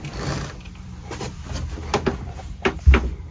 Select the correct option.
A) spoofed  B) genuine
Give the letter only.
A